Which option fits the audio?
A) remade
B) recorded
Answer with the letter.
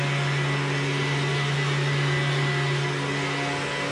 B